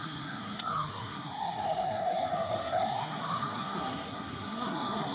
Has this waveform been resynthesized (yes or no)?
yes